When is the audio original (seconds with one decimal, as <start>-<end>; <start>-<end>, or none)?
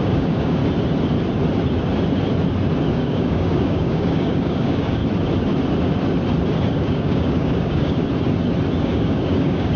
0.6-2.9; 5.0-6.7; 8.0-8.8